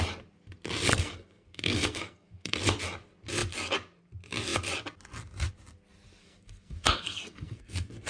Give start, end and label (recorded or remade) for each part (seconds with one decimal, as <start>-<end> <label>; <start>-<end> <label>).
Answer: 0.0-0.9 recorded; 0.9-2.6 remade; 2.6-6.2 recorded; 6.2-8.1 remade